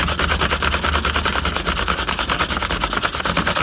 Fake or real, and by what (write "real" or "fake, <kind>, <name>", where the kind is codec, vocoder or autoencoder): real